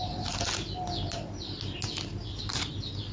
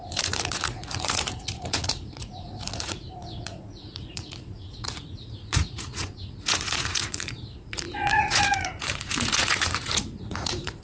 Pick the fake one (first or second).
second